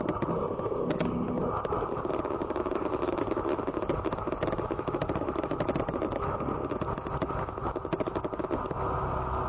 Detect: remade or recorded recorded